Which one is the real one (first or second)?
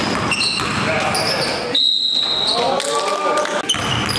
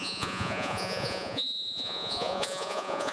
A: first